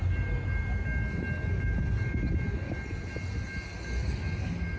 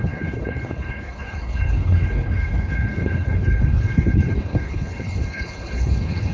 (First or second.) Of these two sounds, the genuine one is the first